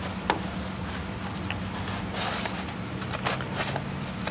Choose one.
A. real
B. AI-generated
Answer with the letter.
A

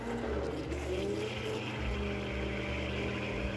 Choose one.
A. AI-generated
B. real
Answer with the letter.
B